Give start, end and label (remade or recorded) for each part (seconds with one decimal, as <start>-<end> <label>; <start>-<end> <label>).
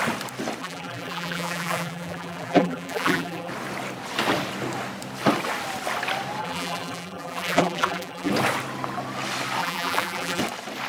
0.0-0.6 recorded; 0.6-3.5 remade; 3.5-6.4 recorded; 6.4-8.3 remade; 8.3-9.6 recorded; 9.6-10.4 remade; 10.4-10.9 recorded